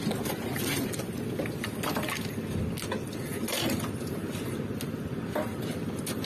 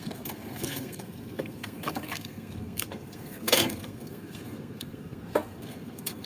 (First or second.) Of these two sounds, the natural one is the first